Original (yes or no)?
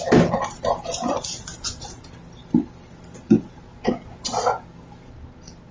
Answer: yes